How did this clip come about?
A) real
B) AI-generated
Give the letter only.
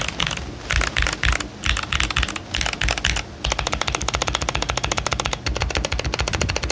A